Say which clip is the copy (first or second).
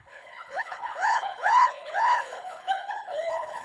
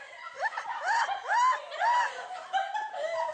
first